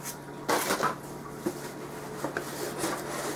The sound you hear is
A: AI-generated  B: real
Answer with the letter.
B